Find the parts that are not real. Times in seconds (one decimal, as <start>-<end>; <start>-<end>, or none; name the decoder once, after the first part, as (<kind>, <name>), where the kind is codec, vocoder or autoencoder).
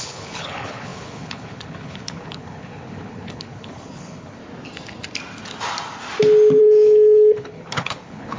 0.0-4.4 (codec, HILCodec); 6.6-8.4